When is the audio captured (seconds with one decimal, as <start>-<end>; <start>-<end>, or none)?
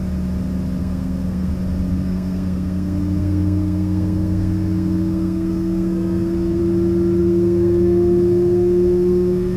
0.0-0.8; 1.5-1.9; 6.6-7.2